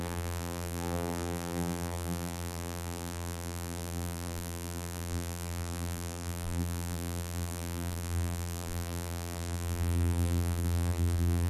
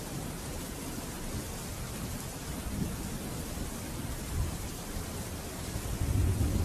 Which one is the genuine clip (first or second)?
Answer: second